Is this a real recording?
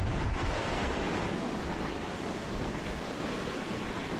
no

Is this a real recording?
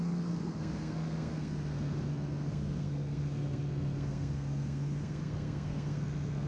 no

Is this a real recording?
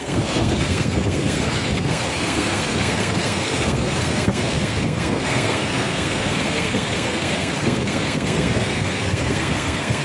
no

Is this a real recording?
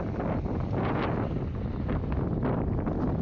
yes